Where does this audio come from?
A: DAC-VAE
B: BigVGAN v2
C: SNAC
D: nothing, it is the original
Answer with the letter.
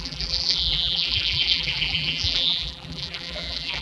B